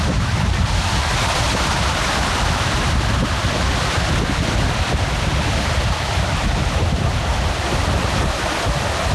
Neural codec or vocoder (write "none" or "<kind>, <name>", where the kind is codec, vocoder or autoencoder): none